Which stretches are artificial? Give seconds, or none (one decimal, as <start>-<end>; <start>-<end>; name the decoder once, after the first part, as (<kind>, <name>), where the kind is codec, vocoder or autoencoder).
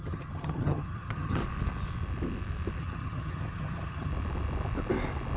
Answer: 0.0-1.4 (vocoder, HiFi-GAN); 2.8-4.1